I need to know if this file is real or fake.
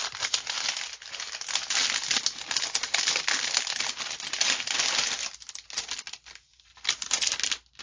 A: real